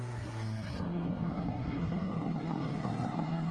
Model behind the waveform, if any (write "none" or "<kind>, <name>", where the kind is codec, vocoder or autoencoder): codec, SNAC